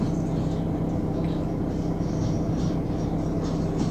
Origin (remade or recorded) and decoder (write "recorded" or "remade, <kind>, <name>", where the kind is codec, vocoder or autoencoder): recorded